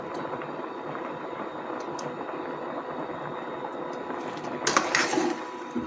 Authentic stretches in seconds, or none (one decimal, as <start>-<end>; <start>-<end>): 1.5-5.0